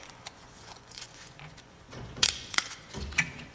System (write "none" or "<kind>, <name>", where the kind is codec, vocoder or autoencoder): vocoder, Vocos